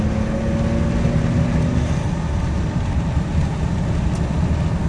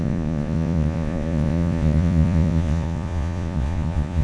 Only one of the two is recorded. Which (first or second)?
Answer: first